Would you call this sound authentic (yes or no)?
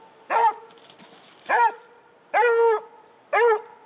yes